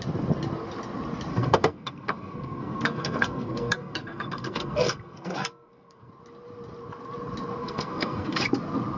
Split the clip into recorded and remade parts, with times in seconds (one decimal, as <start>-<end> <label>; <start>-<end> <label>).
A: 0.0-1.3 recorded; 1.3-6.1 remade; 6.1-7.6 recorded; 7.6-8.4 remade; 8.4-9.0 recorded